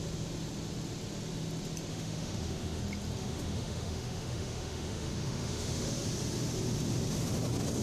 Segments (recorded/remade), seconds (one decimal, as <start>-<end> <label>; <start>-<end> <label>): 0.0-1.9 recorded; 1.9-2.8 remade; 2.8-3.2 recorded; 3.2-5.9 remade; 5.9-7.8 recorded